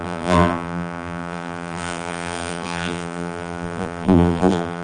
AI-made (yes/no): yes